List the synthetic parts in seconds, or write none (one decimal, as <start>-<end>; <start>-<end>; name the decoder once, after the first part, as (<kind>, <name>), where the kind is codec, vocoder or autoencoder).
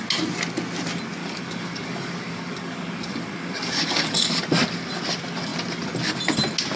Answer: 1.2-4.4 (codec, DAC)